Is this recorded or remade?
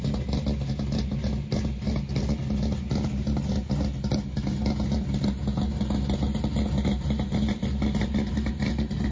recorded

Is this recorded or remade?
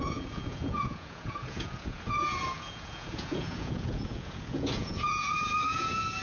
remade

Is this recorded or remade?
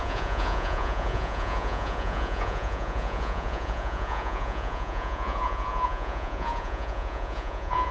remade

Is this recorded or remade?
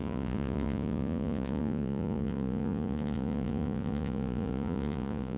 remade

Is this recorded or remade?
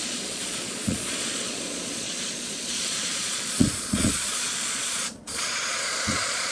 remade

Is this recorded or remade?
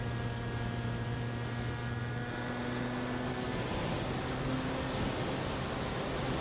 recorded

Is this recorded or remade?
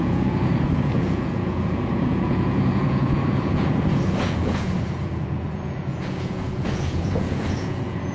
remade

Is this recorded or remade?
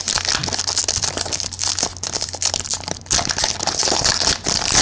recorded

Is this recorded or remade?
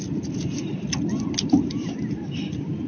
recorded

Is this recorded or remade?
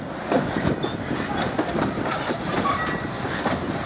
recorded